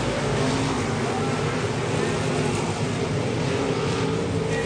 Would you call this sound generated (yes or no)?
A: no